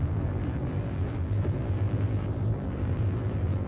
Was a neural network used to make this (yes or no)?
yes